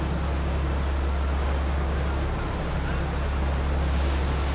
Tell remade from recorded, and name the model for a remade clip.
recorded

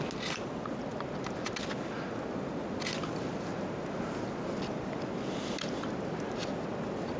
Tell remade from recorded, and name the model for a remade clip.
recorded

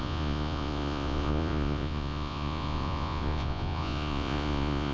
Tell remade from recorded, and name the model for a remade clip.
remade, vocoder, Vocos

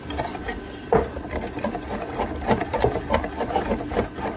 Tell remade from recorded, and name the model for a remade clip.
recorded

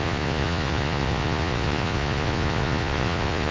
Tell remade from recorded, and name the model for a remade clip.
remade, vocoder, Vocos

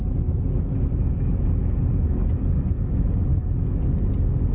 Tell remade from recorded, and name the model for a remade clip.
recorded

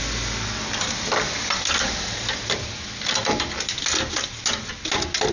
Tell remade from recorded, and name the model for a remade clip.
recorded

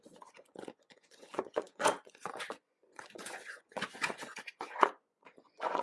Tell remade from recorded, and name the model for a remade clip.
remade, vocoder, Vocos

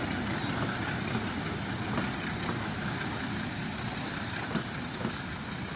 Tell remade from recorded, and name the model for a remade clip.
recorded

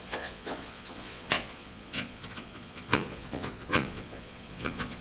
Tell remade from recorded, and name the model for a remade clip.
remade, vocoder, Vocos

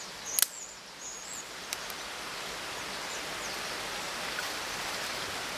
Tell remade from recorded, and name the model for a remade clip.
recorded